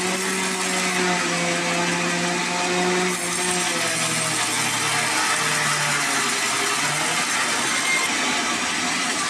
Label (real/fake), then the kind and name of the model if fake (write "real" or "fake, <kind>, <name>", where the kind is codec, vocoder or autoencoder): real